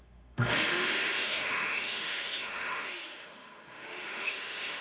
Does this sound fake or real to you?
fake